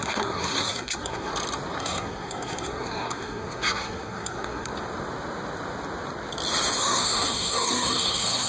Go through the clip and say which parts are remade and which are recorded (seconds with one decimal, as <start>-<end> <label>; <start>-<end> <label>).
0.0-1.3 remade; 1.3-1.8 recorded; 1.8-4.7 remade; 4.7-6.8 recorded; 6.8-8.5 remade